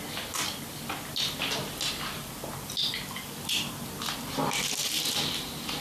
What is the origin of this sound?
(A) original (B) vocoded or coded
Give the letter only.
A